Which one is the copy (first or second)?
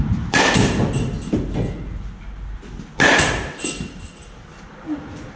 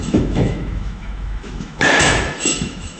second